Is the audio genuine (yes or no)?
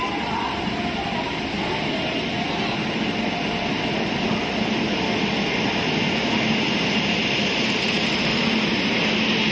yes